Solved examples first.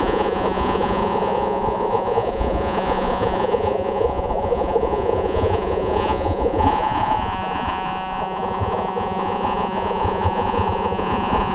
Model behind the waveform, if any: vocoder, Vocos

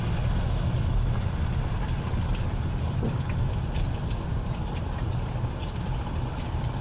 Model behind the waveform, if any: none